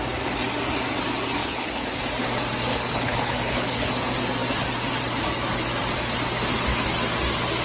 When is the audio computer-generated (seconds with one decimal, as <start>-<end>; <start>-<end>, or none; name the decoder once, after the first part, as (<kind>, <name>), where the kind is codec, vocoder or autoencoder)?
1.4-2.0 (codec, HILCodec); 2.7-3.9